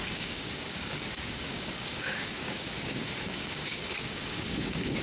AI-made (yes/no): yes